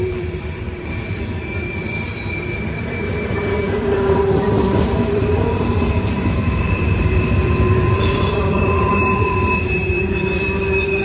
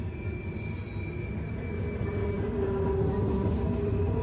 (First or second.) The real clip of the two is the second